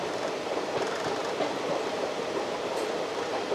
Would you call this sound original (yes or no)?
yes